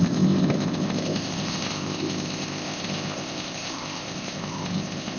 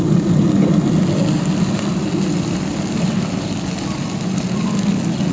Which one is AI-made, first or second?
first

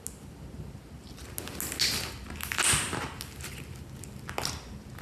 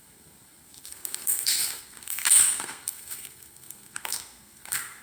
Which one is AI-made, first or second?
second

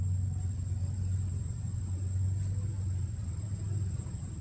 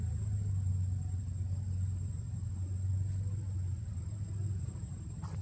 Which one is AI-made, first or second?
second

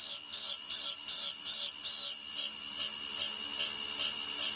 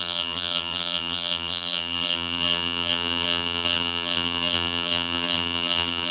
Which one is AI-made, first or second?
second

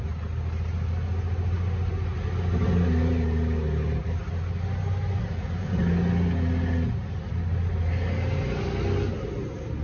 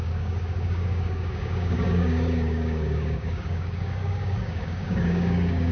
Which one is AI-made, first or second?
second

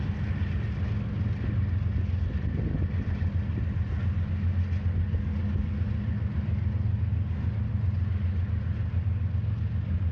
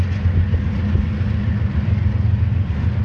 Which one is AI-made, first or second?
second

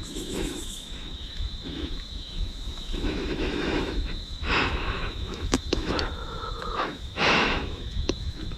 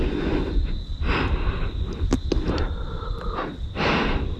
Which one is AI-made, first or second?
first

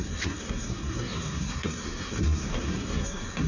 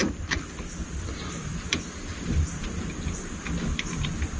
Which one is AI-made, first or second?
first